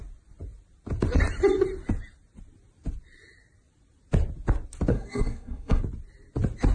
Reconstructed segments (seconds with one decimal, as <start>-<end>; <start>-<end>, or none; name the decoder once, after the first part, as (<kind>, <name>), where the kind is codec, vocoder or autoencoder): 4.9-5.8 (codec, SNAC)